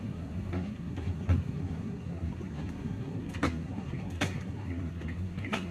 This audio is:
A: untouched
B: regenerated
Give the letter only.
B